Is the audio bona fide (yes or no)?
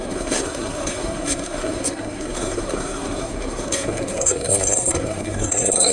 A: no